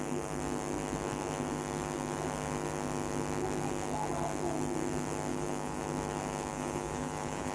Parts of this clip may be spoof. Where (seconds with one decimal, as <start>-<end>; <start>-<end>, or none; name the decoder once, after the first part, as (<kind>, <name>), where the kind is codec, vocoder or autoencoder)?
5.3-5.8 (autoencoder, DAC-VAE); 6.5-7.5